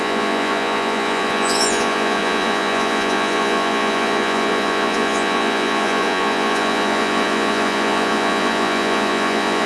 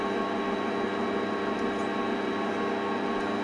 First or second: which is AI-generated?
first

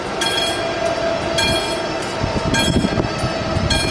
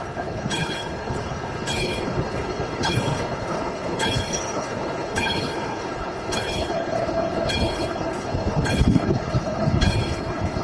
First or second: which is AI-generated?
second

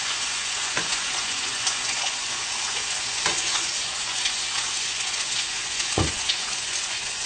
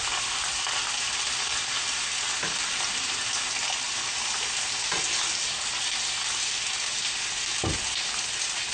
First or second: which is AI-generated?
first